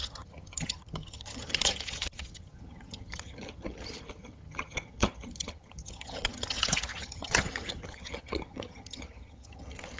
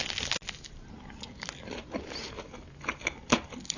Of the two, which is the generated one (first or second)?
first